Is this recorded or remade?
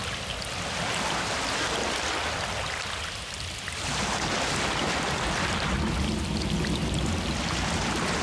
recorded